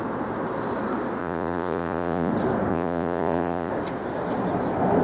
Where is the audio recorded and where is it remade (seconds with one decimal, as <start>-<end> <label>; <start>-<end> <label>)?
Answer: 0.0-1.2 recorded; 1.2-2.3 remade; 2.3-2.7 recorded; 2.7-3.7 remade; 3.7-5.0 recorded